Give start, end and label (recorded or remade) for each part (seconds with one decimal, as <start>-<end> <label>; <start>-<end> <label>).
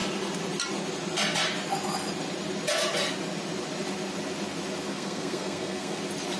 0.0-4.9 recorded; 4.9-6.0 remade; 6.0-6.4 recorded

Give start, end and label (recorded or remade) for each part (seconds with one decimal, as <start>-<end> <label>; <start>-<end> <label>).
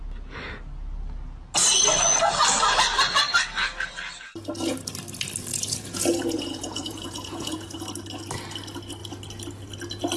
0.0-5.5 recorded; 5.5-7.8 remade; 7.8-10.2 recorded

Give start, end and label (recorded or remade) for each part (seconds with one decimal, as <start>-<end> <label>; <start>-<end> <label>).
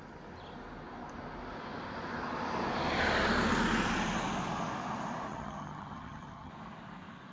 0.0-5.3 recorded; 5.3-6.5 remade; 6.5-7.3 recorded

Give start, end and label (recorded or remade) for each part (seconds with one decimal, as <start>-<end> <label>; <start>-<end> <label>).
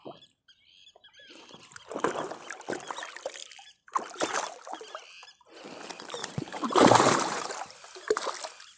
0.0-3.4 recorded; 3.4-4.0 remade; 4.0-6.2 recorded; 6.2-7.5 remade; 7.5-8.8 recorded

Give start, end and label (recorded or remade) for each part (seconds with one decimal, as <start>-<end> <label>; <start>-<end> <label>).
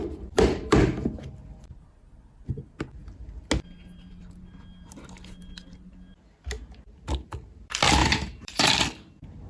0.0-1.3 remade; 1.3-8.0 recorded; 8.0-8.7 remade; 8.7-9.5 recorded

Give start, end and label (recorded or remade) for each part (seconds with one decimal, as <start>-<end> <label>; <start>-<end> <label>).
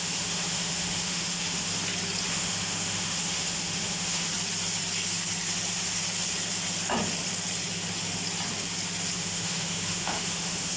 0.0-1.7 remade; 1.7-2.3 recorded; 2.3-4.3 remade; 4.3-9.2 recorded; 9.2-10.8 remade